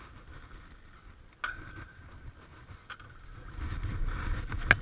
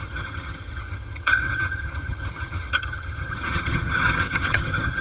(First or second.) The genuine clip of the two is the first